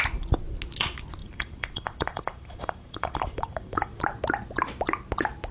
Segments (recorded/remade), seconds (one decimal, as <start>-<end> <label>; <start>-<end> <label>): 0.0-1.2 recorded; 1.2-4.0 remade; 4.0-5.5 recorded